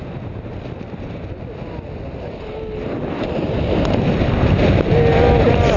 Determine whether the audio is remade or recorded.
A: recorded